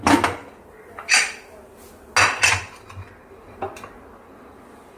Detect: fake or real real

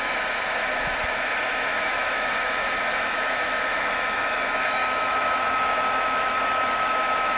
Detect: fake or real fake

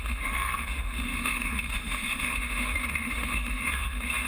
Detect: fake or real fake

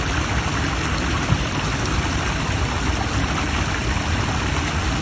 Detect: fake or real real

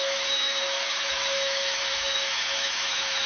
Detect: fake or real fake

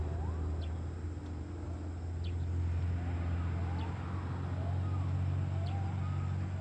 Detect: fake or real real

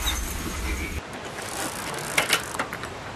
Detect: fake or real real